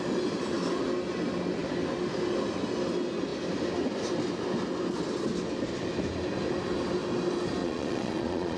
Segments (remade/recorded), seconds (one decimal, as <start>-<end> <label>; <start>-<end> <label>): 0.0-7.6 recorded; 7.6-8.6 remade